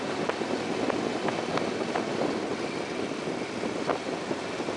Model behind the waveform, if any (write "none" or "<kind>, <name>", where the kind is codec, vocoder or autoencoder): none